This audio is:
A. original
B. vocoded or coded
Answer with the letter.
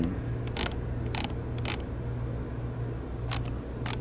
A